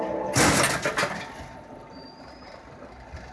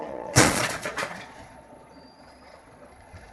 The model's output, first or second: second